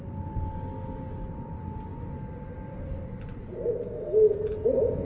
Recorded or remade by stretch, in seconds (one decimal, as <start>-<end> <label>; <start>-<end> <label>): 0.0-5.0 recorded